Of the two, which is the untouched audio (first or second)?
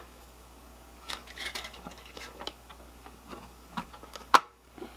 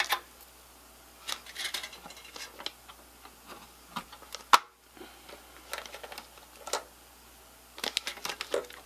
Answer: second